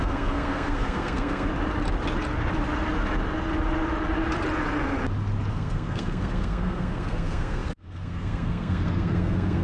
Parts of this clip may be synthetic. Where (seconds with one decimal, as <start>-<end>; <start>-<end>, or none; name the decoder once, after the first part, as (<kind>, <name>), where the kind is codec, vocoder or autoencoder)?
0.0-1.5 (codec, SNAC); 5.5-9.6